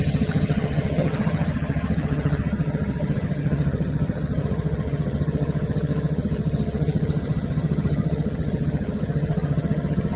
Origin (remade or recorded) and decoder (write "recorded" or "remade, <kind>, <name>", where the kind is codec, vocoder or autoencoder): remade, vocoder, HiFi-GAN